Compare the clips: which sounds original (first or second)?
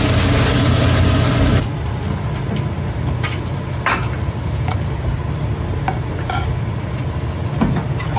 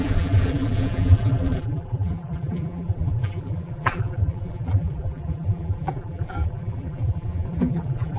first